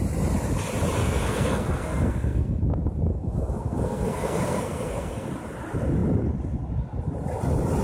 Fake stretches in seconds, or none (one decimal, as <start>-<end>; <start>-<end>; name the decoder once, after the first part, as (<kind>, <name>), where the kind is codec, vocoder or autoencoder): 1.0-2.6 (codec, SNAC); 3.1-5.3